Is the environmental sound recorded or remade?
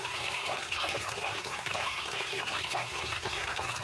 remade